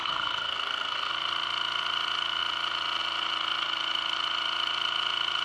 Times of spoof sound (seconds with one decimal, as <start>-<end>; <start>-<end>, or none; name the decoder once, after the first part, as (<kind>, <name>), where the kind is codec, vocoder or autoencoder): 0.0-1.1 (codec, SNAC)